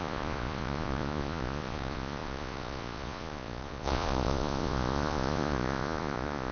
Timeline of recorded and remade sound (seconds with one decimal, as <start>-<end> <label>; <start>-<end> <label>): 0.0-6.5 remade